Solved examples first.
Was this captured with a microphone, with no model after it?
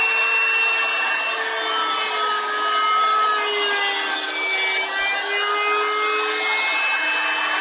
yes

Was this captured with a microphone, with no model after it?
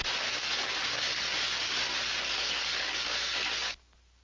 yes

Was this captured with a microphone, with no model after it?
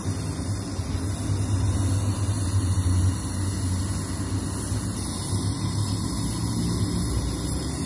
yes